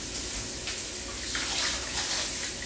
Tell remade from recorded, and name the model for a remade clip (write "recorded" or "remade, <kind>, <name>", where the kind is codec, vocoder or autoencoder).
recorded